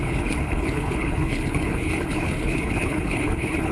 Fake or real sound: fake